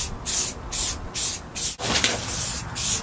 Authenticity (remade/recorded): recorded